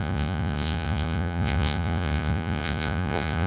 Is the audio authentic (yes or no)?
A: no